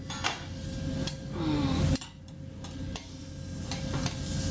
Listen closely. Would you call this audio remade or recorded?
recorded